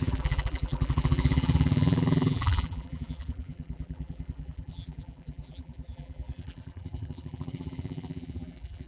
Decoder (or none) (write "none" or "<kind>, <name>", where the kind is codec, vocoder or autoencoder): vocoder, BigVGAN v2